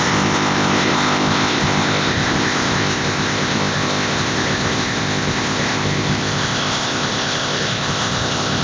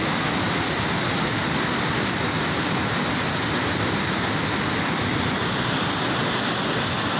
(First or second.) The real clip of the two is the second